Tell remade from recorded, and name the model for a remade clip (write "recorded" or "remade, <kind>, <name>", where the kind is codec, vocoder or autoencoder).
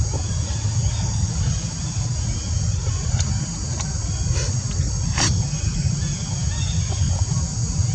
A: recorded